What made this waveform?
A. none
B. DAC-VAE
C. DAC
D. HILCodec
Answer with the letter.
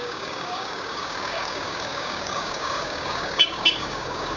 C